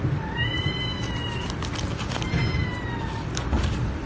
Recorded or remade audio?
recorded